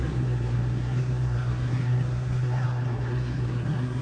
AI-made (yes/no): yes